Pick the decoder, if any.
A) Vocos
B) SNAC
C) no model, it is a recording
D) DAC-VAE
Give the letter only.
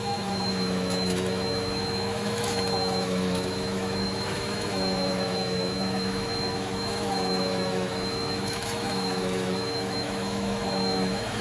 D